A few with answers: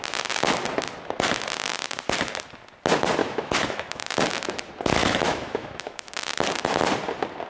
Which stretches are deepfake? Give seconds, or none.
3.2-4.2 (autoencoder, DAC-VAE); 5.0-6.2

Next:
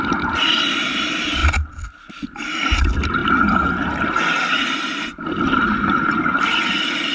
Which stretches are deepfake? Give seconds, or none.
none

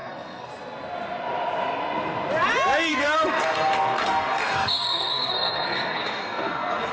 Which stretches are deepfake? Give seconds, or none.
0.0-0.5 (codec, SNAC); 2.9-6.9

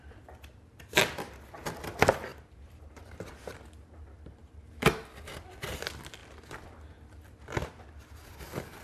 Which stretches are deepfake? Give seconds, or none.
2.3-3.3 (vocoder, BigVGAN v2); 4.4-5.3

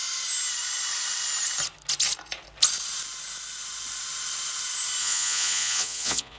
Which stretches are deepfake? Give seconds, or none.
5.0-6.4 (vocoder, Vocos)